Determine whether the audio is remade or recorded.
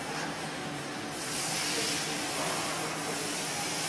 recorded